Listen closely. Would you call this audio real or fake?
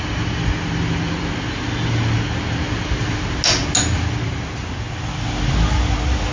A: real